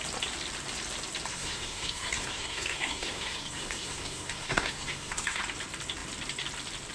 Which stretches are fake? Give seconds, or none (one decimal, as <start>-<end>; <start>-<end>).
1.3-5.4

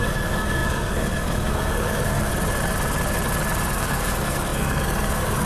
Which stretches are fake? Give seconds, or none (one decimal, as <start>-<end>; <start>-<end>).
0.0-2.3; 3.7-5.5

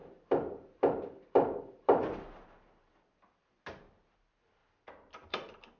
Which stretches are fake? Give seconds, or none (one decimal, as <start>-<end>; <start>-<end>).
0.0-3.5; 4.6-5.8